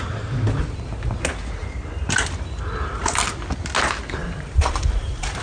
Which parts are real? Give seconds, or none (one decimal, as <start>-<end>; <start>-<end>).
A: 0.0-4.2

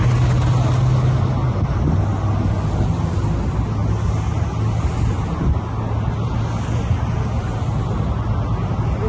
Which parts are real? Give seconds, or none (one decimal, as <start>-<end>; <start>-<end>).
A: 0.0-9.1

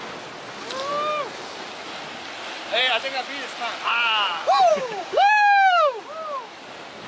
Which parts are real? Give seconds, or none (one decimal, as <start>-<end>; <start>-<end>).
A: 0.0-4.7; 6.0-7.1

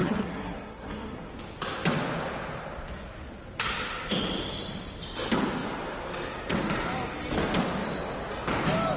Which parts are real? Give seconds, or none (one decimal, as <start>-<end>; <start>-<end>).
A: 1.3-9.0

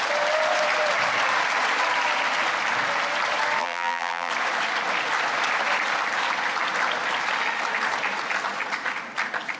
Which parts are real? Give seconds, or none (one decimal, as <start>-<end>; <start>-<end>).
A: 0.0-3.6; 4.3-9.6

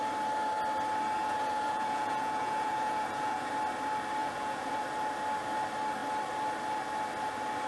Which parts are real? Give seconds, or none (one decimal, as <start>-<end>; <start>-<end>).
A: 0.0-1.2; 3.5-4.2; 4.8-7.7

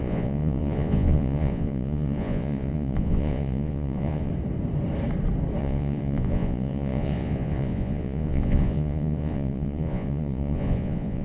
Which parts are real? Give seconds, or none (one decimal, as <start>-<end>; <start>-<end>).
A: 4.3-5.6